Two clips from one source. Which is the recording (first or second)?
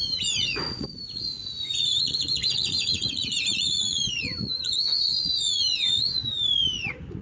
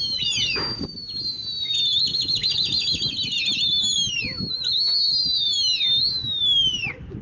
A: second